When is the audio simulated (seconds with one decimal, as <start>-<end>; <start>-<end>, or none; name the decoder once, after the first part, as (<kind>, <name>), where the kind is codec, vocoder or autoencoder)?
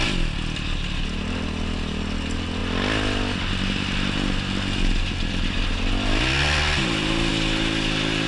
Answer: none